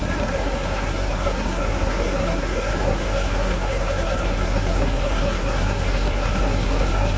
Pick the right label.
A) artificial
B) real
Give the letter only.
A